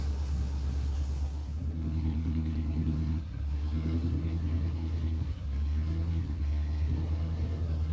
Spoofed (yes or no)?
yes